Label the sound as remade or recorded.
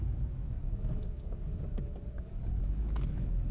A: remade